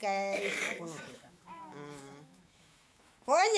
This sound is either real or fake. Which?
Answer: fake